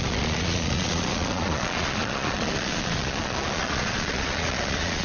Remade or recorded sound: remade